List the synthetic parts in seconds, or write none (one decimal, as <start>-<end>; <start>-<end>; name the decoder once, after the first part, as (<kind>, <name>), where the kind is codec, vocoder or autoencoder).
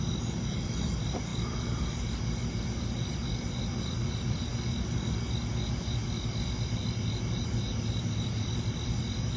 none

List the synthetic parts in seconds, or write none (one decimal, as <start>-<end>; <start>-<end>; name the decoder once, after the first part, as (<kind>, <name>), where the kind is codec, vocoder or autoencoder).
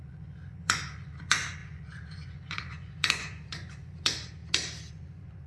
0.0-4.4 (vocoder, Vocos); 4.9-5.5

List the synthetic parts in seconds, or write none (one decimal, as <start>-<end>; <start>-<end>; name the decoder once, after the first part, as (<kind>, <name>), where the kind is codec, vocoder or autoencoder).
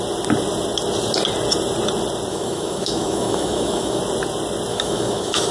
2.3-4.0 (autoencoder, DAC-VAE); 4.7-5.5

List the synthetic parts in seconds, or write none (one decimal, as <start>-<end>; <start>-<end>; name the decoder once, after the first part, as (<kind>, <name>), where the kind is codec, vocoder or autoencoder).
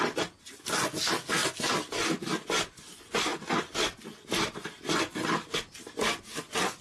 none